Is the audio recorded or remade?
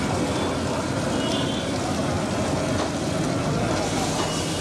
recorded